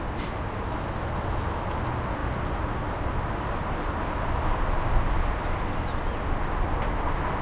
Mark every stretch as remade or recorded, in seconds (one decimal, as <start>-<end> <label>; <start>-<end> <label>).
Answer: 0.0-7.4 recorded